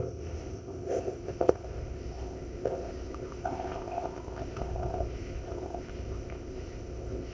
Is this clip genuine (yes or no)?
no